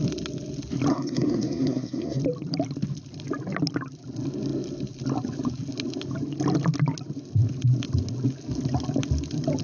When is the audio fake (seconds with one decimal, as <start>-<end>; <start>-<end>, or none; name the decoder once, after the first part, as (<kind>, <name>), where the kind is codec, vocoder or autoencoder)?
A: 0.9-2.2 (codec, SNAC)